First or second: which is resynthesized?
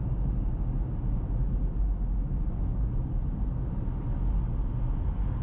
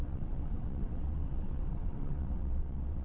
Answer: second